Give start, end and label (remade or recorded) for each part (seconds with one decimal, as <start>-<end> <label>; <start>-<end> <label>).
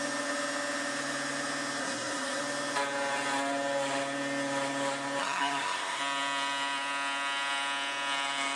0.0-1.8 recorded; 1.8-2.4 remade; 2.4-5.2 recorded; 5.2-6.0 remade; 6.0-8.6 recorded